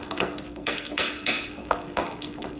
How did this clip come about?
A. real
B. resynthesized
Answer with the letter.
B